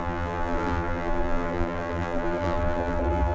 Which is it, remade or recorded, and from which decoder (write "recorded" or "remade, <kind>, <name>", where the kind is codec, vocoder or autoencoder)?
remade, vocoder, BigVGAN v2